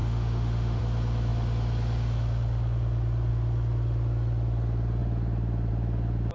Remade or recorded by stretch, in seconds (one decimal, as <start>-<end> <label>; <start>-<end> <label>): 0.0-0.8 remade; 0.8-6.3 recorded